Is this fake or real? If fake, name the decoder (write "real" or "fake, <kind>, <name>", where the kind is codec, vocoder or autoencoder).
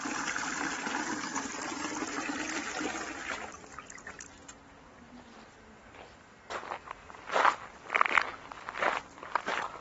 real